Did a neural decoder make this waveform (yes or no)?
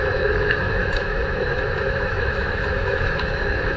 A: yes